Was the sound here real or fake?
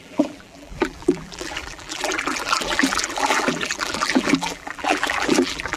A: fake